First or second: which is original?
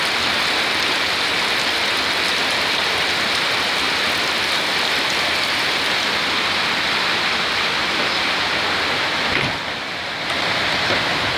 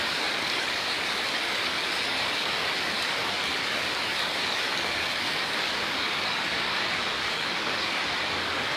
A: first